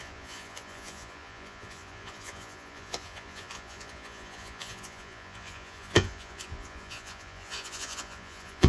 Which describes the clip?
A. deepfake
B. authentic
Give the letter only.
A